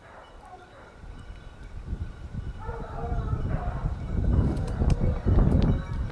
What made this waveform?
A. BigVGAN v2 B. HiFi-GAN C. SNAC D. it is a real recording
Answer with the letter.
A